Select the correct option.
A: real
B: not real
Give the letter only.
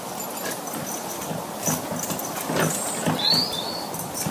A